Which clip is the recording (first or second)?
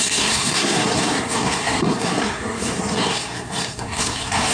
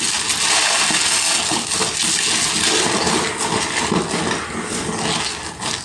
second